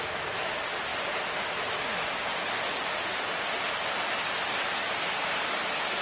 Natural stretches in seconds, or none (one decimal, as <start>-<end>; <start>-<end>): 0.0-6.0